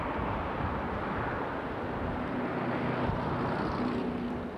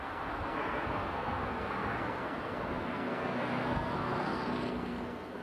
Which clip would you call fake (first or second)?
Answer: second